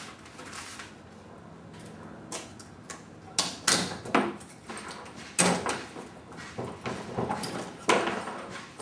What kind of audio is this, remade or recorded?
recorded